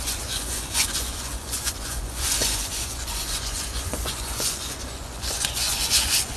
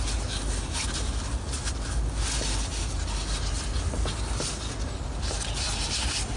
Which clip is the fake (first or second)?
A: first